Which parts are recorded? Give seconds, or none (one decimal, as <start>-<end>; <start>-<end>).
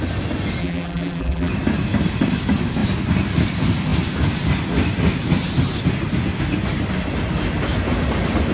0.0-0.6; 1.5-8.5